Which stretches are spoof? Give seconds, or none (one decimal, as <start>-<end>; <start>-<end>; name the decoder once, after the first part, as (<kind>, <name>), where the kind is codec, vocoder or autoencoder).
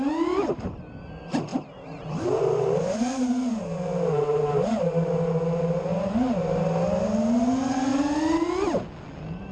none